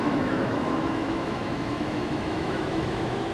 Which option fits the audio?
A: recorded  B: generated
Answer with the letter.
B